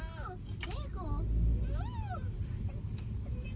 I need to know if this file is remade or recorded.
recorded